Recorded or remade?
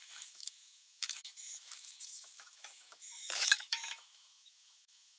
remade